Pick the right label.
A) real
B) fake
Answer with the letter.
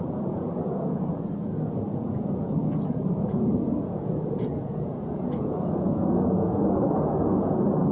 B